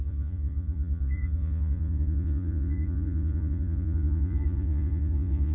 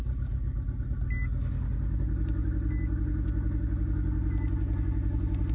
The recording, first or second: second